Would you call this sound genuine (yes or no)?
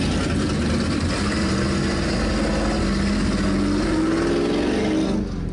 yes